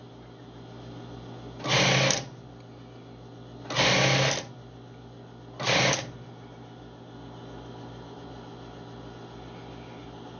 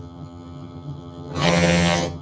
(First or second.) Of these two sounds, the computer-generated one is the second